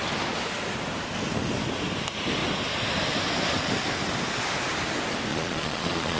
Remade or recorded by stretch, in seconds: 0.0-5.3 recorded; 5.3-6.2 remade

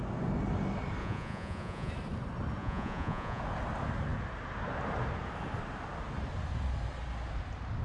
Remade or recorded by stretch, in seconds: 0.0-1.0 recorded; 1.0-1.9 remade; 1.9-2.6 recorded; 2.6-3.4 remade; 3.4-7.8 recorded

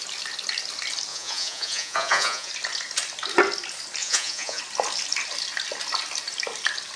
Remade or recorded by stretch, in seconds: 0.0-1.1 recorded; 1.1-2.5 remade; 2.5-4.0 recorded; 4.0-4.6 remade; 4.6-7.0 recorded

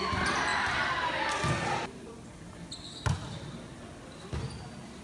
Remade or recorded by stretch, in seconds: 0.0-5.0 recorded

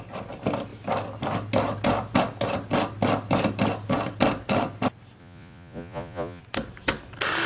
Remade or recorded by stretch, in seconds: 0.0-5.2 recorded; 5.2-6.4 remade; 6.4-7.5 recorded

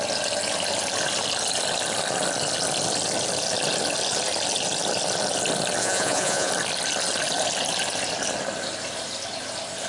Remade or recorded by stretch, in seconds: 0.0-5.8 recorded; 5.8-6.5 remade; 6.5-9.9 recorded